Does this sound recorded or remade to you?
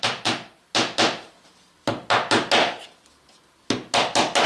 recorded